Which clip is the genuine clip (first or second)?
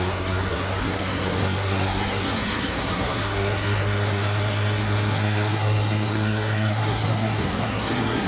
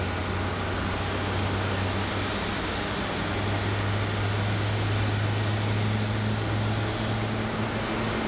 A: second